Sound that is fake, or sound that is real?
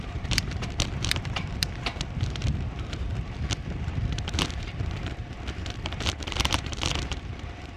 fake